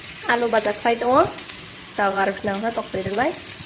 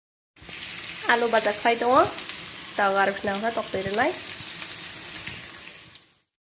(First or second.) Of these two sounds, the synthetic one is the first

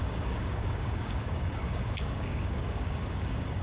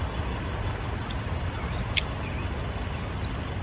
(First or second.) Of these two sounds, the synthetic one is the first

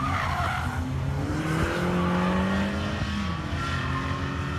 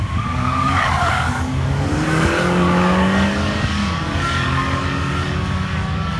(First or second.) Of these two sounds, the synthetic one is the second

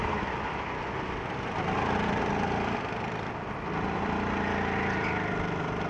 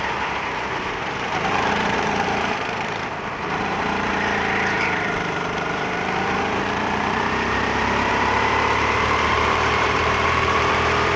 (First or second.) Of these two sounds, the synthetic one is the second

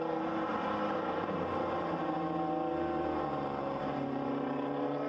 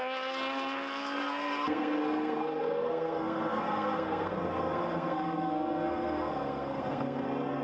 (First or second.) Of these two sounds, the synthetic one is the second